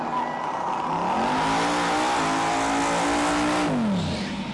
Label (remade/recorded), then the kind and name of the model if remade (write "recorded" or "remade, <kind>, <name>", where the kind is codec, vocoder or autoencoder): recorded